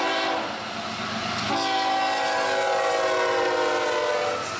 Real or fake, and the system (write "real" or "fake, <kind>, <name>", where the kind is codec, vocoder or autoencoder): real